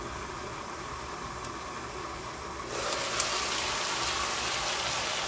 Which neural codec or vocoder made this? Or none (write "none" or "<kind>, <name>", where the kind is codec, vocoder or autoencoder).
none